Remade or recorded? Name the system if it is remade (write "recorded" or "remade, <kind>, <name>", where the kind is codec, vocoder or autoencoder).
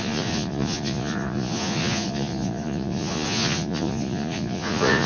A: remade, vocoder, Vocos